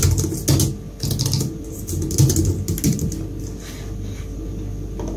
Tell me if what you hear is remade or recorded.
recorded